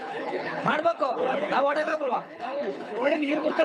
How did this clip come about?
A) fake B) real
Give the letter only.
A